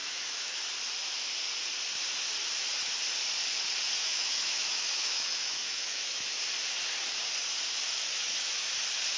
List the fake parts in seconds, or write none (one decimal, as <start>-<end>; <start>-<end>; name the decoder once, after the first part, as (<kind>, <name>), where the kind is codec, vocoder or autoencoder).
0.0-0.6 (autoencoder, DAC-VAE); 4.0-6.4; 7.9-8.7